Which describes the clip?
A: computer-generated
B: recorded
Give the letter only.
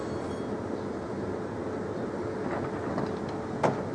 B